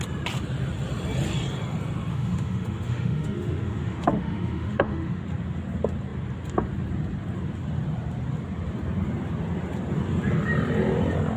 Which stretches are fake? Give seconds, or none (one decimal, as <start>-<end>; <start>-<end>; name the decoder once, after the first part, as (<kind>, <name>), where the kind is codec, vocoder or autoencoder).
2.1-5.2 (autoencoder, DAC-VAE)